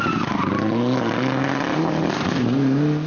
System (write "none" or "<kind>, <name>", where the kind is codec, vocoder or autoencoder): none